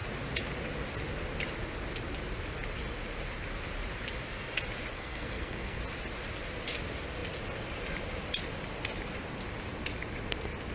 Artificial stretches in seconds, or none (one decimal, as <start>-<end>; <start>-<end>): 4.9-5.8